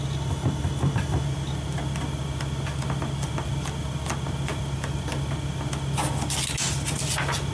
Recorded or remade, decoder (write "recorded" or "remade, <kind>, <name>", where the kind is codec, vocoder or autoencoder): recorded